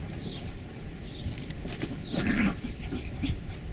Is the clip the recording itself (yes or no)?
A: no